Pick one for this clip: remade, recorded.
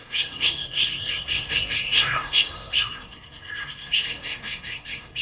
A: remade